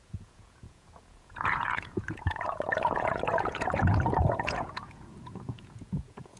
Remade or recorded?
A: remade